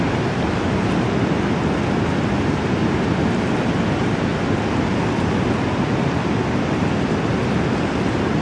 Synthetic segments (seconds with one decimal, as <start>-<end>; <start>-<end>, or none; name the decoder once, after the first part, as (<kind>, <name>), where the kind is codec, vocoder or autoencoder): none